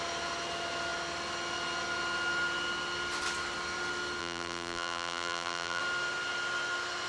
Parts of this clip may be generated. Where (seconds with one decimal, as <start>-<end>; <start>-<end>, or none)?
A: 4.2-5.8